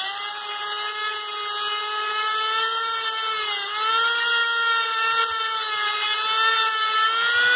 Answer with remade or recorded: recorded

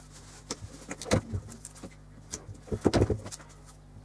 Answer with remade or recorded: recorded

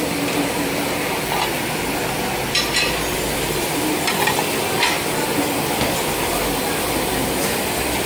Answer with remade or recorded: recorded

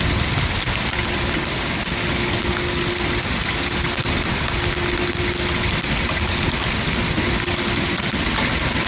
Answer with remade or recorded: recorded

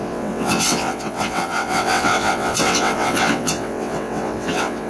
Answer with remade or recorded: remade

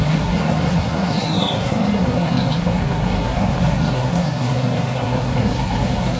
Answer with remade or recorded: remade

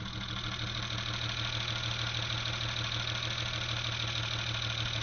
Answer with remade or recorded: recorded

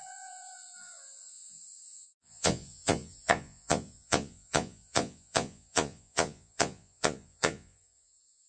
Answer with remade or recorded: remade